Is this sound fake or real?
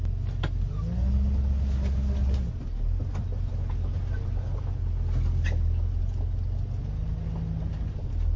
real